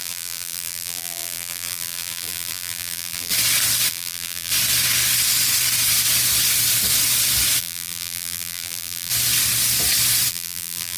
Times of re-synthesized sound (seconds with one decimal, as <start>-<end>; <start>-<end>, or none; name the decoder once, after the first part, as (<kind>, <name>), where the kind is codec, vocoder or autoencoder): 0.0-3.3 (vocoder, BigVGAN v2); 3.9-4.5; 7.6-9.1; 10.3-11.0